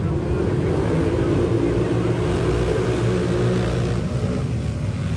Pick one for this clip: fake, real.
real